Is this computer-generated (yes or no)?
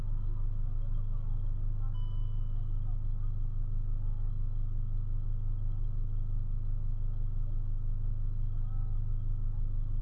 no